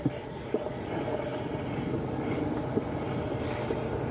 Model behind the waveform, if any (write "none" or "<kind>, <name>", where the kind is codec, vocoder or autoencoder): none